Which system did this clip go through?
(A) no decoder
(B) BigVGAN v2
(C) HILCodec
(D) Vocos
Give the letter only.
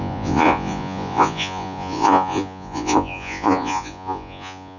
D